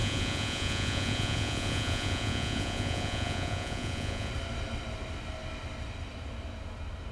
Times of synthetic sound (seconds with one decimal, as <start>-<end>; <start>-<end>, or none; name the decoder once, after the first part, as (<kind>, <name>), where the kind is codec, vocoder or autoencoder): 0.0-4.3 (vocoder, Vocos)